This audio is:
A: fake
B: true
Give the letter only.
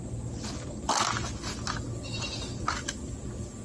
B